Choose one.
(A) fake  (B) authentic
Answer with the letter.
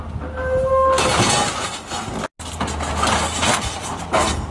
B